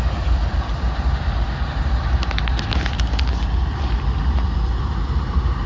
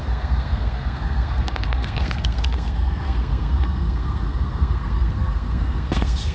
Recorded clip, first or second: first